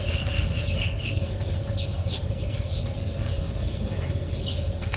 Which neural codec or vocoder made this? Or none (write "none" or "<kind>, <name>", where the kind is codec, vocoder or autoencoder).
codec, SNAC